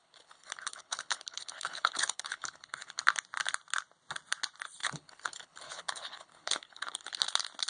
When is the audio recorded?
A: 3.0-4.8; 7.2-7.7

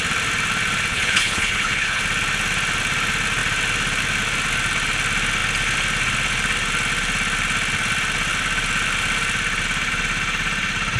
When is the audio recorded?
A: 0.0-0.9; 2.0-11.0